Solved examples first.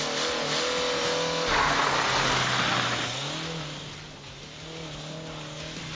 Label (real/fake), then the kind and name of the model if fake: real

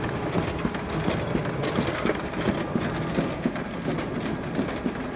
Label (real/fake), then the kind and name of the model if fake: real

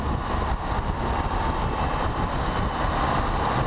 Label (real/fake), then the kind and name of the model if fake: real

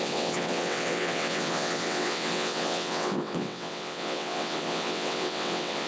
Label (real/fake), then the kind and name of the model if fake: fake, vocoder, WaveNeXt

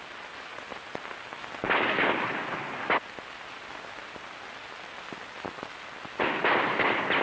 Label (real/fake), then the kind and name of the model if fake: real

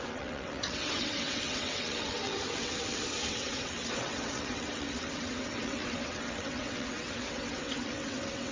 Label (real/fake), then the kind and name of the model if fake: fake, vocoder, WaveNeXt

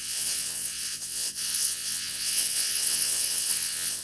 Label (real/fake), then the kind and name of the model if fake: fake, vocoder, WaveNeXt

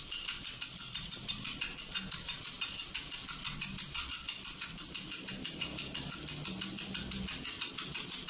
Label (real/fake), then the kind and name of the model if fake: real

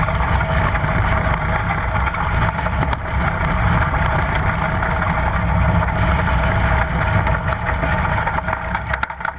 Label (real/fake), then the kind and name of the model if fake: real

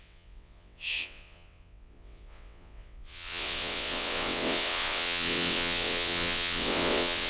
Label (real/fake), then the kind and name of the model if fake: fake, vocoder, WaveNeXt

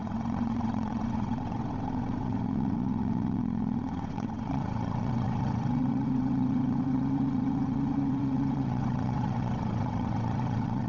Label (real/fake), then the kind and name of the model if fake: fake, vocoder, WaveNeXt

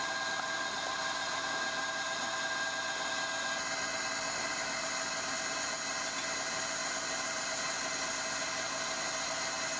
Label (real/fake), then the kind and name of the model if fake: real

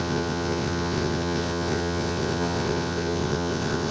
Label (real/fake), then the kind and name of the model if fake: fake, vocoder, WaveNeXt